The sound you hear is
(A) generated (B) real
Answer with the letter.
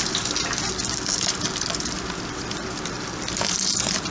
B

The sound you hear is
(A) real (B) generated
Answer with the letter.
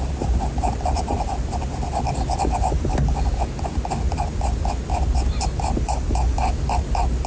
A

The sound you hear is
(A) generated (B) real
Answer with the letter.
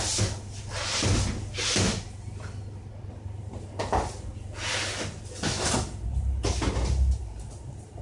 B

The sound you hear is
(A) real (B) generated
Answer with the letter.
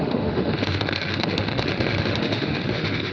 B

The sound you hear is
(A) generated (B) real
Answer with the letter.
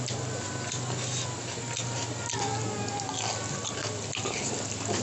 B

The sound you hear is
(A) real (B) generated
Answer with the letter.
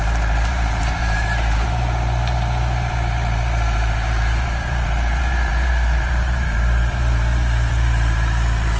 B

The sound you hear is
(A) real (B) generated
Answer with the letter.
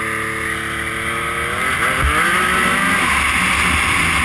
A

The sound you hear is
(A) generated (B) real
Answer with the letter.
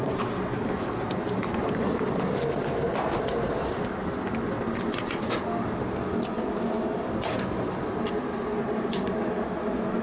B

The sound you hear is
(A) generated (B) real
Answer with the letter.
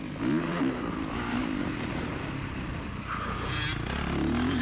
B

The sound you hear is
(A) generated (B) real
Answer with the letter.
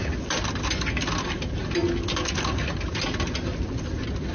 B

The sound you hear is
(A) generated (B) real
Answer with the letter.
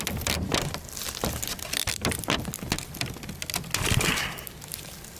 B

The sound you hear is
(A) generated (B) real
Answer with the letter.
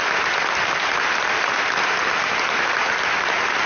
B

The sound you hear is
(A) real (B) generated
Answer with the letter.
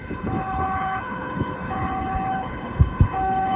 B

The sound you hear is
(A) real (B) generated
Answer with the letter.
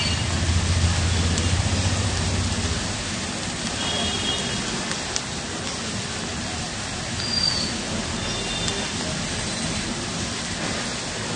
A